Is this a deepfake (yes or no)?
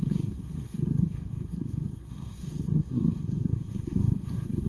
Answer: yes